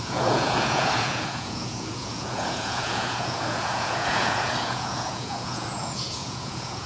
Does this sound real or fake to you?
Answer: fake